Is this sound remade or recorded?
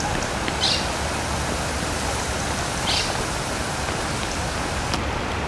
recorded